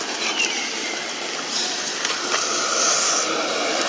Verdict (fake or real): fake